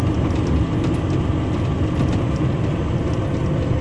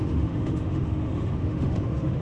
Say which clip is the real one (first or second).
first